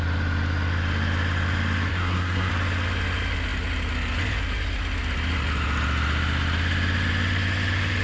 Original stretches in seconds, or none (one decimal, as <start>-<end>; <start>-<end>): 0.0-1.9; 2.5-8.0